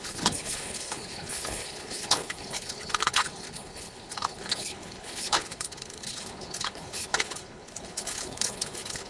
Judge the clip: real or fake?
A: fake